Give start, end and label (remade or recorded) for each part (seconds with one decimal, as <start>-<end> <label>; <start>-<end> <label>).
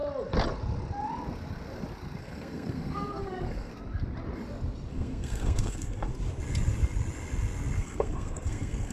0.0-2.2 recorded; 2.2-3.7 remade; 3.7-4.9 recorded; 4.9-6.1 remade; 6.1-7.8 recorded; 7.8-8.9 remade